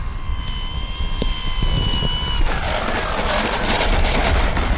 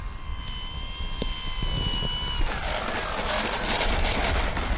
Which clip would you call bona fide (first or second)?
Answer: second